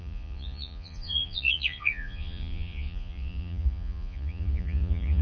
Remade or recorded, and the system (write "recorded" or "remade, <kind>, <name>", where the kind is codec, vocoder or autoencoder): remade, vocoder, Vocos